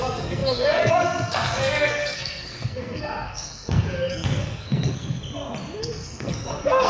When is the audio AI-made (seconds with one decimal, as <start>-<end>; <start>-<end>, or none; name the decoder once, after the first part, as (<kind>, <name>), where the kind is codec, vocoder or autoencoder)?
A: 0.0-5.2 (codec, SNAC); 5.8-6.9